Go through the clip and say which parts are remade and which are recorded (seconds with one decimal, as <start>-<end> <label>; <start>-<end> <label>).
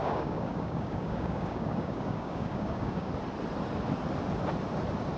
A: 0.0-3.1 remade; 3.1-5.2 recorded